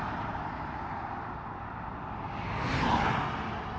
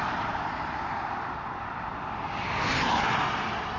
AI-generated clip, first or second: second